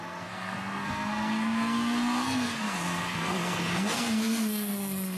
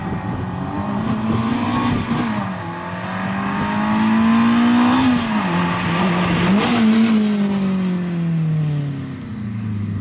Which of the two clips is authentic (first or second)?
second